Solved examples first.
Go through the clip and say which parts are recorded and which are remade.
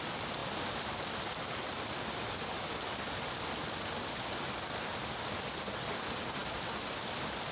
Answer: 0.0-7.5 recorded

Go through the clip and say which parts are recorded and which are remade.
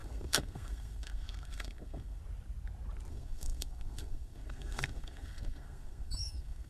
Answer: 0.0-2.2 remade; 2.2-3.1 recorded; 3.1-6.7 remade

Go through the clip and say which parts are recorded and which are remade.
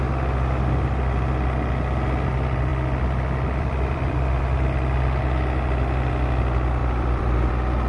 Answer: 0.0-2.7 recorded; 2.7-4.4 remade; 4.4-6.8 recorded; 6.8-7.5 remade; 7.5-7.9 recorded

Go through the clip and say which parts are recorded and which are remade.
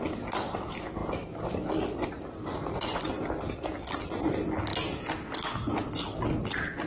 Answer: 0.0-1.0 recorded; 1.0-3.1 remade; 3.1-6.9 recorded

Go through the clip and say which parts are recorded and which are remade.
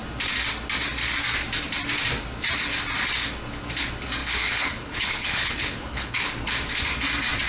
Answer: 0.0-4.2 recorded; 4.2-6.5 remade; 6.5-7.5 recorded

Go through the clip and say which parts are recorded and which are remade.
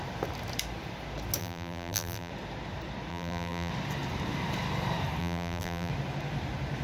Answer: 0.0-1.4 recorded; 1.4-2.3 remade; 2.3-3.1 recorded; 3.1-3.7 remade; 3.7-5.2 recorded; 5.2-5.9 remade; 5.9-6.8 recorded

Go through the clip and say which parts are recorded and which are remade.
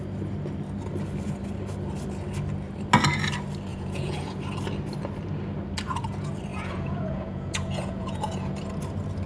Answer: 0.0-3.7 recorded; 3.7-4.4 remade; 4.4-6.5 recorded; 6.5-8.5 remade; 8.5-9.3 recorded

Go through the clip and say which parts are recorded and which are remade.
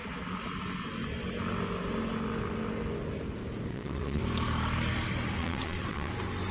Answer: 0.0-3.7 recorded; 3.7-4.2 remade; 4.2-5.4 recorded; 5.4-6.1 remade; 6.1-6.5 recorded